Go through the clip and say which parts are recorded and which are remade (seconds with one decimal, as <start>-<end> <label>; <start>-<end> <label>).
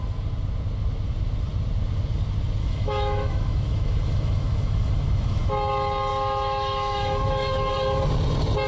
0.0-2.6 recorded; 2.6-5.5 remade; 5.5-6.1 recorded; 6.1-7.7 remade; 7.7-8.7 recorded